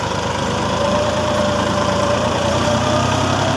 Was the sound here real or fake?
fake